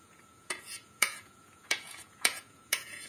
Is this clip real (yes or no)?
no